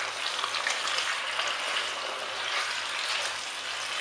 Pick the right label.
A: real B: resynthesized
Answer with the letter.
A